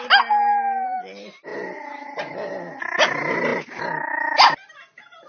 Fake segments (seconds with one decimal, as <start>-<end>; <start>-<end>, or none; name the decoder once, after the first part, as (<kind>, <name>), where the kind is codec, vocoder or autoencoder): none